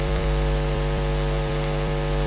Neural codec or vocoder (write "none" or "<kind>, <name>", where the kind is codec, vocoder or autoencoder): vocoder, BigVGAN v2